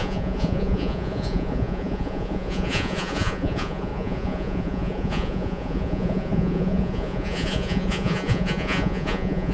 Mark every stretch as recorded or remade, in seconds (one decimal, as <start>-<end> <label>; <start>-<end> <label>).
0.0-9.5 remade